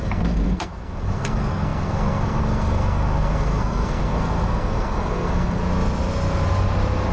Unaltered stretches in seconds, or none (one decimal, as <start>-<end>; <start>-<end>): 5.6-7.1